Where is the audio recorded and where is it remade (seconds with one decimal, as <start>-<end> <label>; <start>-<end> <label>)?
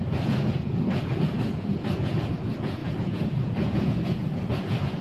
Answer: 0.0-5.0 remade